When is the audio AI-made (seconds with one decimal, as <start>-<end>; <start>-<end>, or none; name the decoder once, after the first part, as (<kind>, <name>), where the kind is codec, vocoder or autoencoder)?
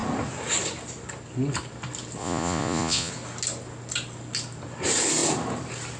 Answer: 2.2-3.1 (vocoder, Vocos)